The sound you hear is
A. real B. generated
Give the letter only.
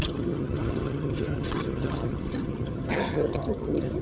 B